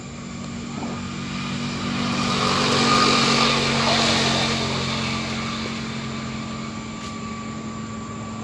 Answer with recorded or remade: recorded